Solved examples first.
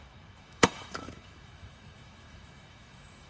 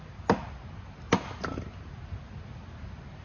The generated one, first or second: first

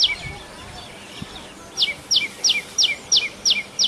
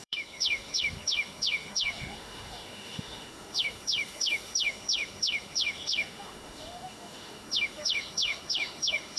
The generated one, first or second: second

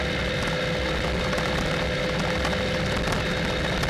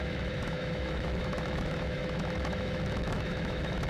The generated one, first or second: second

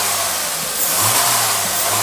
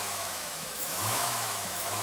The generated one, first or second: second